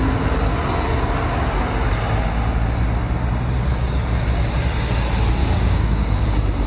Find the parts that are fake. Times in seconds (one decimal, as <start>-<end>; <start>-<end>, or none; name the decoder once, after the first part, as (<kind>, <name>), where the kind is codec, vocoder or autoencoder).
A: 5.4-6.2 (codec, DAC)